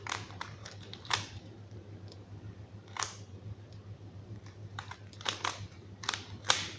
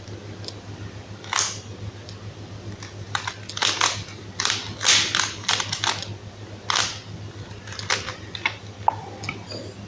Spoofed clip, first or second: first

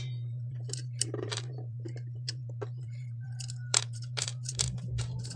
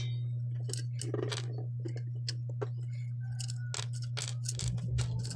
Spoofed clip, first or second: first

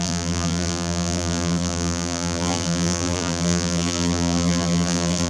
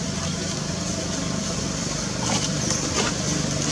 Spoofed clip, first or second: first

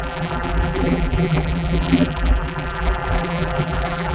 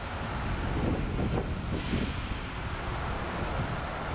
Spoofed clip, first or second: first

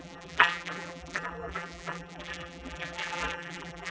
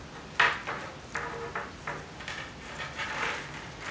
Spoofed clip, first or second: first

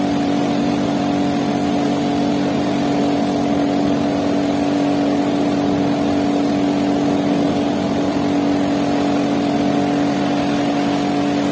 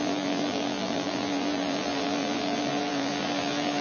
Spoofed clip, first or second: second